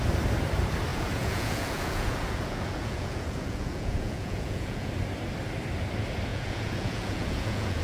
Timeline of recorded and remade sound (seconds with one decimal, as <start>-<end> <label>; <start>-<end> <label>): 0.0-0.9 recorded; 0.9-4.9 remade; 4.9-6.3 recorded; 6.3-7.8 remade

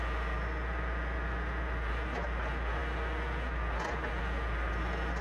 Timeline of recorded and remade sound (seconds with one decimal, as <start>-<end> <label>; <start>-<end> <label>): 0.0-5.2 recorded

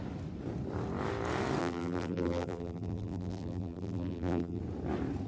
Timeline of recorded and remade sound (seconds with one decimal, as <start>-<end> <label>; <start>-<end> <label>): 0.0-1.6 recorded; 1.6-4.6 remade; 4.6-5.3 recorded

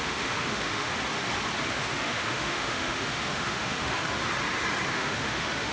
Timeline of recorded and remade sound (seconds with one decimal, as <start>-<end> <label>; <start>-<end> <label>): 0.0-0.9 remade; 0.9-1.7 recorded; 1.7-4.1 remade; 4.1-4.9 recorded; 4.9-5.7 remade

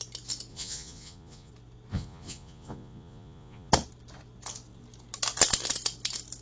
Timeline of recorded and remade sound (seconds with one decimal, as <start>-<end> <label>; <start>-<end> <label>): 0.0-0.5 recorded; 0.5-1.5 remade; 1.5-1.9 recorded; 1.9-3.7 remade; 3.7-6.4 recorded

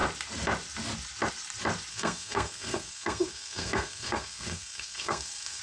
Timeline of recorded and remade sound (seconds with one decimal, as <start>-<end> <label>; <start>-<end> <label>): 0.0-1.9 recorded; 1.9-5.6 remade

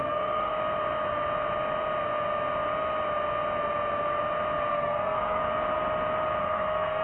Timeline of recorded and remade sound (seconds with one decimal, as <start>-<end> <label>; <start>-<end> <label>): 0.0-0.5 remade; 0.5-4.7 recorded; 4.7-5.4 remade; 5.4-6.4 recorded; 6.4-7.0 remade

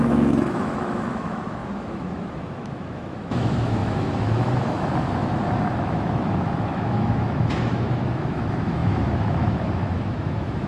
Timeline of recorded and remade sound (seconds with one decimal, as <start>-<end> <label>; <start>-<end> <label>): 0.0-10.7 remade